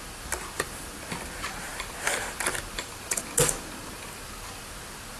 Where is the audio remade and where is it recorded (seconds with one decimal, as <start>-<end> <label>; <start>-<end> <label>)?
0.0-5.2 recorded